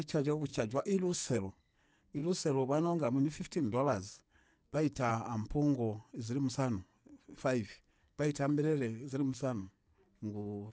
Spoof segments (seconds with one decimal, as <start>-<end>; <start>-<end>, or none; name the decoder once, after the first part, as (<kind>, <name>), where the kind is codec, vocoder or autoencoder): 0.0-5.1 (codec, SNAC); 7.7-9.9